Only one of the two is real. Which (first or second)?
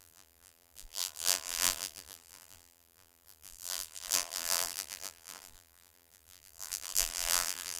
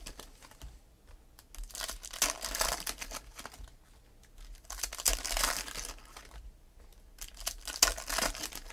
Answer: second